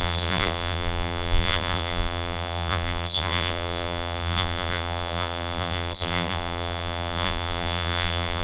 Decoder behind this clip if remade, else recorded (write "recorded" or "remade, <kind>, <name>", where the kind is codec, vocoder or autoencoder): remade, vocoder, BigVGAN v2